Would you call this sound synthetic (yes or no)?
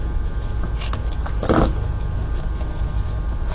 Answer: no